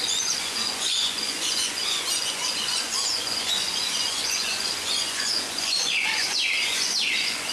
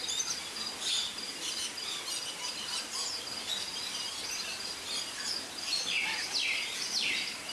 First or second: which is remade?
first